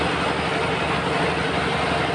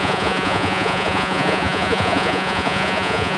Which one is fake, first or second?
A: second